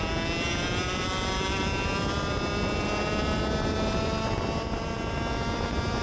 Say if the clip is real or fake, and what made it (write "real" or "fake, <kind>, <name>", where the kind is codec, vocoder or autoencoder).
real